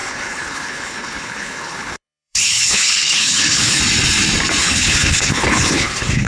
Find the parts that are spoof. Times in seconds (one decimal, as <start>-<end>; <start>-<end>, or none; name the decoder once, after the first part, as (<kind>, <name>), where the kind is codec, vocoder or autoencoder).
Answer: 0.0-3.8 (codec, HILCodec); 4.6-6.3